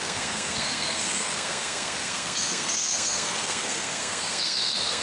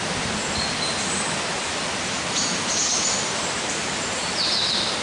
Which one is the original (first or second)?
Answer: second